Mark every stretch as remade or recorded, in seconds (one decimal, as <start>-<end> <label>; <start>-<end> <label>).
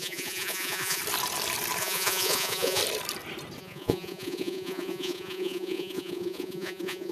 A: 0.0-1.0 remade; 1.0-1.8 recorded; 1.8-2.8 remade; 2.8-3.6 recorded; 3.6-7.1 remade